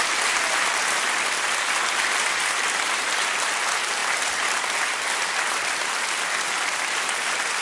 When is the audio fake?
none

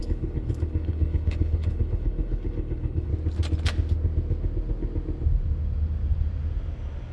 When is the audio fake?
0.0-3.1 (codec, HILCodec)

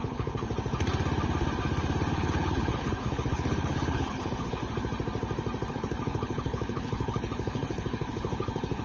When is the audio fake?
0.0-0.5 (codec, HILCodec); 2.1-4.6; 5.7-8.8

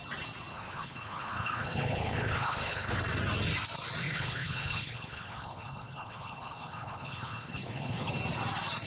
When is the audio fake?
0.5-3.0 (codec, HILCodec); 4.0-8.1

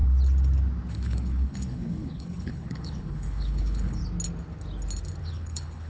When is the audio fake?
0.9-4.0 (codec, HILCodec); 5.2-5.9